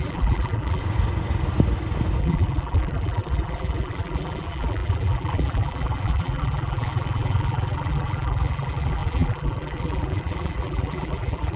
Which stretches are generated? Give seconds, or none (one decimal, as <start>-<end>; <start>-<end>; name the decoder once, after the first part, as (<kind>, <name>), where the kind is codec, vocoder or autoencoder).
0.0-0.8 (vocoder, BigVGAN v2); 2.2-11.6